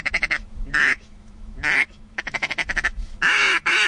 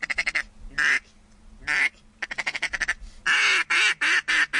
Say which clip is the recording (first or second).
second